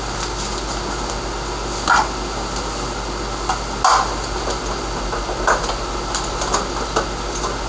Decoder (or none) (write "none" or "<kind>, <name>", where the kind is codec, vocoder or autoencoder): none